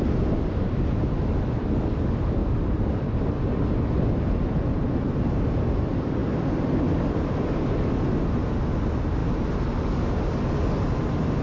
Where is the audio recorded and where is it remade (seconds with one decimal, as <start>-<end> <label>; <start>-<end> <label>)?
0.0-2.4 recorded; 2.4-3.2 remade; 3.2-11.4 recorded